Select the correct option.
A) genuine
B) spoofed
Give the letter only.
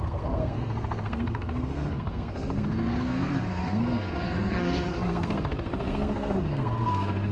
B